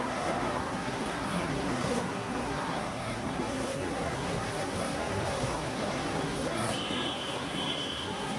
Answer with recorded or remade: remade